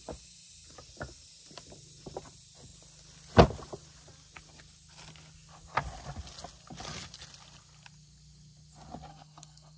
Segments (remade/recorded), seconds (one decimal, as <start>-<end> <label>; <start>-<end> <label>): 0.0-9.1 recorded; 9.1-9.8 remade